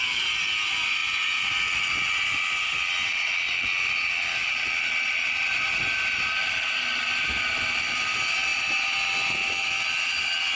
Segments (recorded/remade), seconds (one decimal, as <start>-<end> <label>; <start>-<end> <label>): 0.0-10.6 recorded

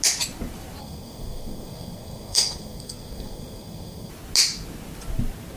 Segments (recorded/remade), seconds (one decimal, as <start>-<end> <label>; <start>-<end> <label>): 0.0-0.8 recorded; 0.8-4.1 remade; 4.1-5.6 recorded

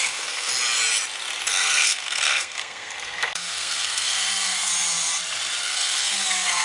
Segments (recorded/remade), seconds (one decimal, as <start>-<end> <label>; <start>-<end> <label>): 0.0-0.5 remade; 0.5-1.5 recorded; 1.5-4.7 remade; 4.7-5.6 recorded; 5.6-6.6 remade

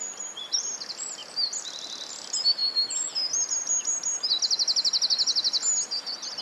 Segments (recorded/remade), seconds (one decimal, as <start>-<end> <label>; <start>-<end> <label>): 0.0-6.4 recorded

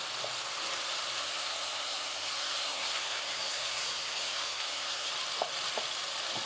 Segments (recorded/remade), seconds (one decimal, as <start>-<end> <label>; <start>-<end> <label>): 0.0-1.2 recorded; 1.2-5.1 remade; 5.1-6.5 recorded

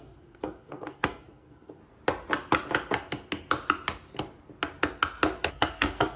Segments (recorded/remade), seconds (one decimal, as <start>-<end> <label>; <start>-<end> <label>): 0.0-1.8 remade; 1.8-5.5 recorded; 5.5-6.2 remade

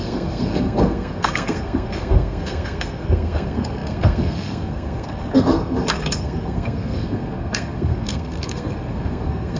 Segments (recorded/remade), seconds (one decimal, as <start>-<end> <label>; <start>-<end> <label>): 0.0-9.6 remade